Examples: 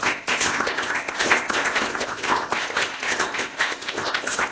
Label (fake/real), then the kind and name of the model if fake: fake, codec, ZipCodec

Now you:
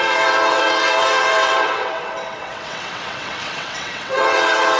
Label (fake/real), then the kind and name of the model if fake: fake, vocoder, WaveNeXt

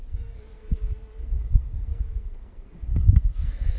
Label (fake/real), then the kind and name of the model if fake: fake, codec, SNAC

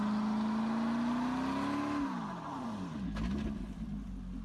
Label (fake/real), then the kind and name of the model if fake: real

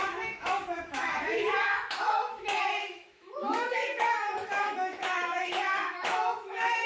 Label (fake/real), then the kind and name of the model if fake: fake, autoencoder, DAC-VAE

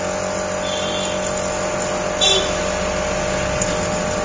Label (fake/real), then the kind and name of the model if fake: real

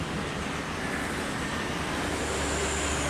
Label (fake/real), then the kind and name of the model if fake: real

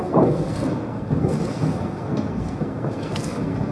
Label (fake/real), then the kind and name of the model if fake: fake, codec, SNAC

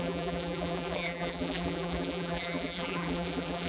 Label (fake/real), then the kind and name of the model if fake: fake, vocoder, BigVGAN v2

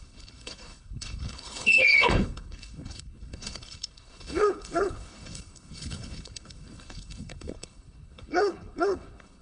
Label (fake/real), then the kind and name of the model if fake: fake, codec, HILCodec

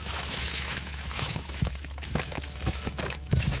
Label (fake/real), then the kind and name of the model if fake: fake, autoencoder, DAC-VAE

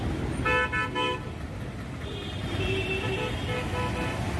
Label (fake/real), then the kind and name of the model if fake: real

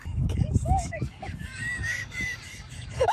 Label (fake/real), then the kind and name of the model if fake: fake, codec, DAC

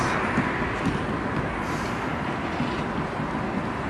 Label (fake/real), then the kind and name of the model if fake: real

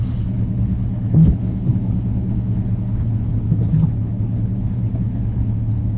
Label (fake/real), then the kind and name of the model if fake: fake, codec, HILCodec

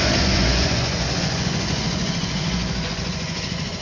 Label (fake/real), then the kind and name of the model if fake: fake, vocoder, Vocos